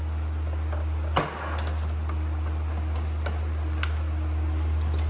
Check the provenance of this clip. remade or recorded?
recorded